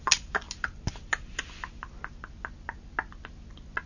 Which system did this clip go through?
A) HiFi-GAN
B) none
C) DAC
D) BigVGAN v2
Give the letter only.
B